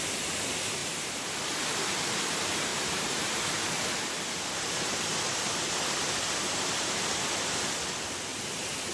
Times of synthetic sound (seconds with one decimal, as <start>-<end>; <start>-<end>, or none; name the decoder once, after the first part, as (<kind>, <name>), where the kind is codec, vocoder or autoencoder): 0.8-1.4 (vocoder, BigVGAN v2); 2.7-3.8; 8.3-8.9